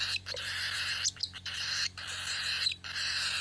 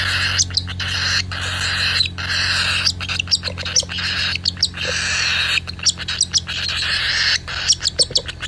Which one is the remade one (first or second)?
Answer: first